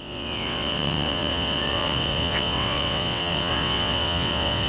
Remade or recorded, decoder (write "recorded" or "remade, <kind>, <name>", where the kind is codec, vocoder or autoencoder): remade, vocoder, WaveNeXt